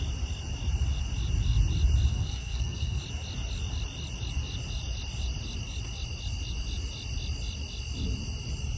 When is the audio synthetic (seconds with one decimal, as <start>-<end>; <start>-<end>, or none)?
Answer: 2.1-3.0